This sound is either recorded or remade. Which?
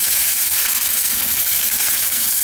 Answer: remade